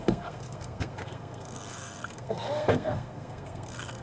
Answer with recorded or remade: remade